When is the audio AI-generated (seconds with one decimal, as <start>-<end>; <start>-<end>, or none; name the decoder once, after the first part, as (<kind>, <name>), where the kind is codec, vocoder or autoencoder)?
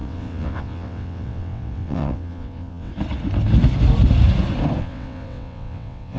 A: 0.0-2.9 (vocoder, WaveNeXt); 4.8-6.2